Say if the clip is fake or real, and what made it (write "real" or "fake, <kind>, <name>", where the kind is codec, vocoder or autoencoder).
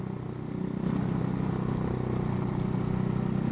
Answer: real